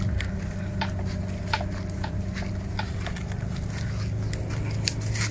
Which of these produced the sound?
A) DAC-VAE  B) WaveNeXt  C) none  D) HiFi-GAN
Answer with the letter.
C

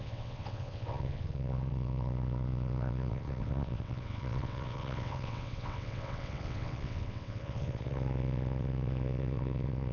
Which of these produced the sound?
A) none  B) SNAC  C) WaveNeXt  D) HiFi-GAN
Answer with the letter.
C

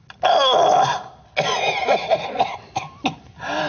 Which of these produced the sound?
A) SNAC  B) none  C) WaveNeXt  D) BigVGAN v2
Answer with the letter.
B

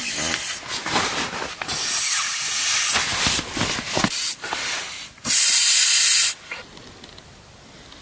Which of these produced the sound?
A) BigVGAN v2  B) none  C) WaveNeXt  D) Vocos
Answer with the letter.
B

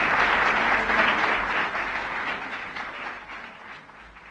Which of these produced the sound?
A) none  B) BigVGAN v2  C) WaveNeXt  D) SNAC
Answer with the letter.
A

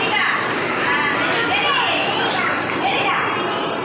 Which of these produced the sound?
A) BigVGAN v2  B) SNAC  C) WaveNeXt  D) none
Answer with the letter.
D